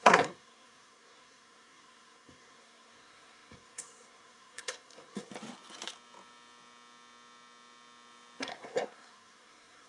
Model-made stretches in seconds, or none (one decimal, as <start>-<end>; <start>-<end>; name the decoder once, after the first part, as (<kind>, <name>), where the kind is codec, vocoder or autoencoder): 0.0-5.3 (codec, SNAC); 8.4-9.9